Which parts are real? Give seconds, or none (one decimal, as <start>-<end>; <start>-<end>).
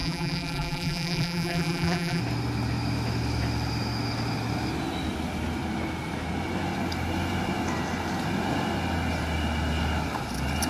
2.2-10.7